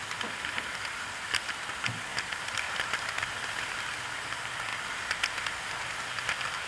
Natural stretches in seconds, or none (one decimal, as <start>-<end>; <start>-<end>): 4.7-5.8